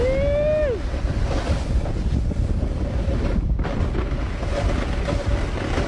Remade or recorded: recorded